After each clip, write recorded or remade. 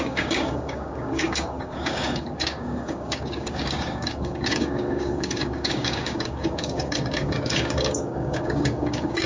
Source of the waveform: remade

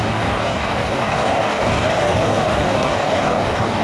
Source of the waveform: remade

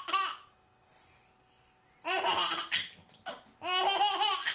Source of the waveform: recorded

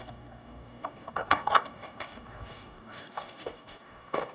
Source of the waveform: remade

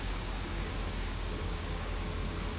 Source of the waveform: remade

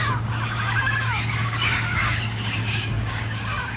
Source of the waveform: remade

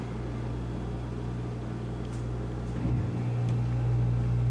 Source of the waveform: recorded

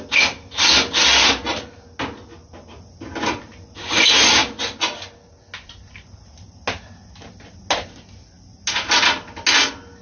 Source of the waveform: recorded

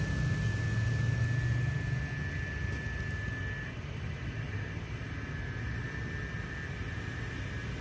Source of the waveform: recorded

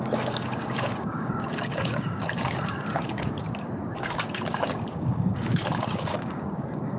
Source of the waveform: remade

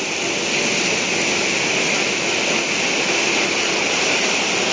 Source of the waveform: recorded